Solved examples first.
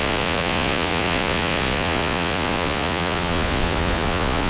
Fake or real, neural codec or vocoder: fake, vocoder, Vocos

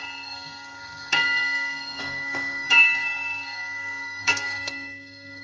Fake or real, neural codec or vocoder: fake, codec, SNAC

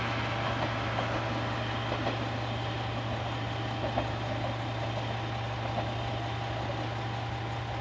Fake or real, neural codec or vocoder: real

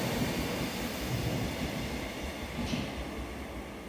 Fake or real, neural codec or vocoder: real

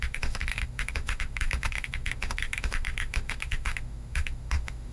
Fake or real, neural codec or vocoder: fake, autoencoder, DAC-VAE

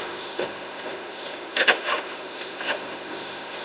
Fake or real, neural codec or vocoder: fake, autoencoder, DAC-VAE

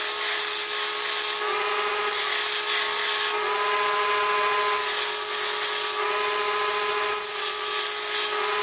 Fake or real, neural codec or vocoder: real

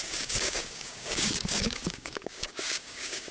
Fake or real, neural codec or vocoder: fake, codec, DAC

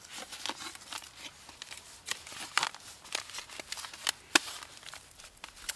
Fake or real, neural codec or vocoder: real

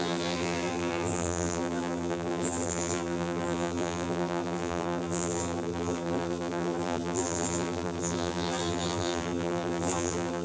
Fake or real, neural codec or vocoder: fake, vocoder, BigVGAN v2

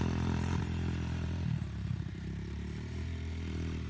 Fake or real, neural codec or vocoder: fake, vocoder, BigVGAN v2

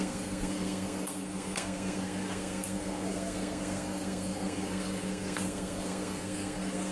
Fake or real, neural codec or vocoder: fake, codec, SNAC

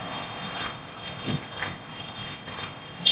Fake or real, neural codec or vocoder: fake, codec, ZipCodec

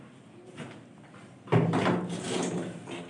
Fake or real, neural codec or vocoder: fake, vocoder, BigVGAN v2